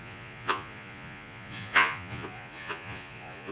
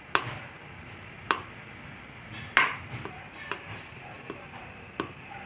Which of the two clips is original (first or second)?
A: second